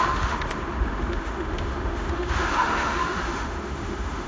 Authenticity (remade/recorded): remade